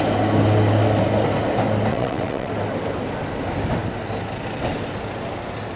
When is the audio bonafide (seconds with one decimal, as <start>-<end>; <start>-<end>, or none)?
0.0-1.9; 2.5-5.8